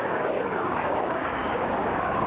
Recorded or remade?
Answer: remade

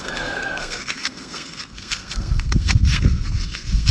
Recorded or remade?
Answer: remade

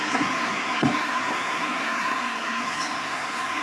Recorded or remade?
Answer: remade